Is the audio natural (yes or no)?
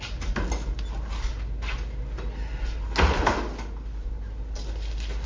yes